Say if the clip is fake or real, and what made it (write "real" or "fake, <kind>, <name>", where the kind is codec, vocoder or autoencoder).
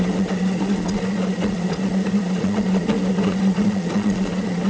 fake, vocoder, Vocos